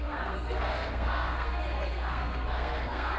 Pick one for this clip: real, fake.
fake